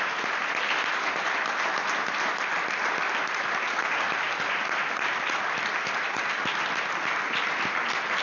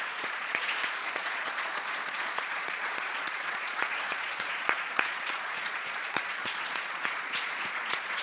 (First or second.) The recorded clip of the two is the first